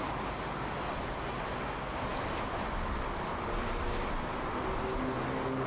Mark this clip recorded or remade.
recorded